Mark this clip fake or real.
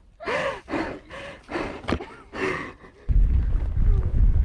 real